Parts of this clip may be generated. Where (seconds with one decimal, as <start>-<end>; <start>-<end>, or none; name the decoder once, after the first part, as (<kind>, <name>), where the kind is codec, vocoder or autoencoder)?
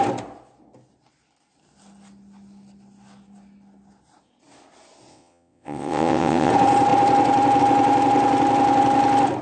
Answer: 5.1-6.5 (vocoder, WaveNeXt)